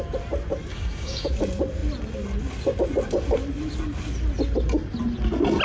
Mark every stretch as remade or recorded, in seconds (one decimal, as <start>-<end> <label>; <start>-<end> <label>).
0.0-0.7 recorded; 0.7-1.3 remade; 1.3-5.6 recorded